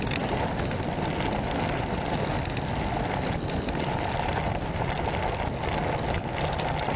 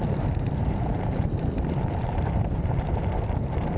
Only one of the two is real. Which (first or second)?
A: first